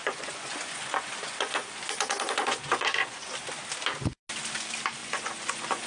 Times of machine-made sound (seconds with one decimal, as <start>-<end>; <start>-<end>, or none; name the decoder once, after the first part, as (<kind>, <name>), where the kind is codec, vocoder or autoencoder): 0.0-3.3 (vocoder, Vocos); 5.0-5.9